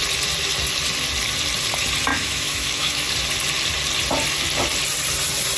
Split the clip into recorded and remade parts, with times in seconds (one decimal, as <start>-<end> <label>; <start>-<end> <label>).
0.0-2.1 recorded; 2.1-3.1 remade; 3.1-5.6 recorded